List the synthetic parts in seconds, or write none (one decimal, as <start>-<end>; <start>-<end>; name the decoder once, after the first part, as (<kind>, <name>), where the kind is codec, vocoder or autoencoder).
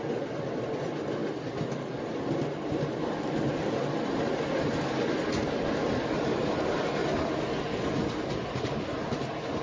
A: none